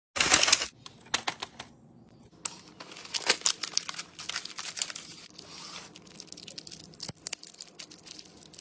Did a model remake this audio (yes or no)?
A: no